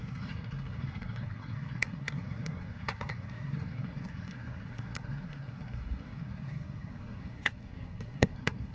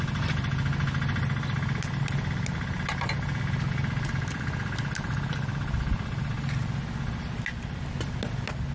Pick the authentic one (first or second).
second